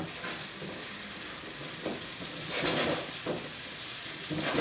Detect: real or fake real